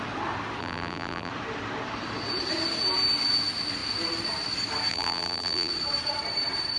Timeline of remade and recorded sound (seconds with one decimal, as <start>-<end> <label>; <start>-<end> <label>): 0.0-0.6 recorded; 0.6-1.3 remade; 1.3-4.9 recorded; 4.9-5.7 remade; 5.7-6.8 recorded